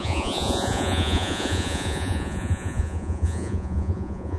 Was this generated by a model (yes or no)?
yes